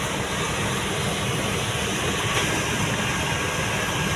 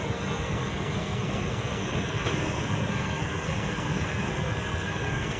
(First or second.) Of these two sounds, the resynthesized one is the second